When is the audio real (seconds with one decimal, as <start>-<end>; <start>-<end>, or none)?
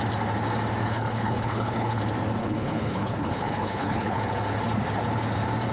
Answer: 0.0-0.8; 2.0-2.4; 4.2-5.7